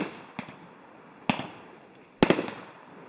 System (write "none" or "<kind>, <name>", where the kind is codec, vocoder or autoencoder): none